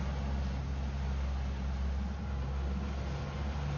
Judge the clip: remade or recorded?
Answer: recorded